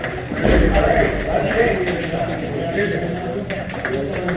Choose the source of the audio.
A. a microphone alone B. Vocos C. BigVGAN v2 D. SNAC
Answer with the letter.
A